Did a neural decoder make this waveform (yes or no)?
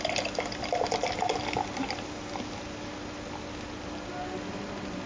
no